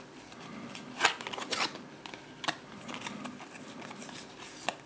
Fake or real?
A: real